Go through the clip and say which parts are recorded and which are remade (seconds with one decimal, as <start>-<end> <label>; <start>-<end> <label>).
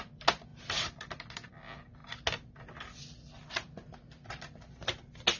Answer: 0.0-5.4 recorded